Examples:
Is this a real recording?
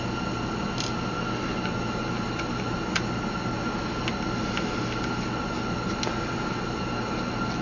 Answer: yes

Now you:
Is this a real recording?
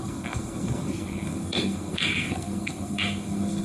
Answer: no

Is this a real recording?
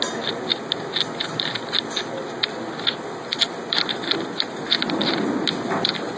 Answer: yes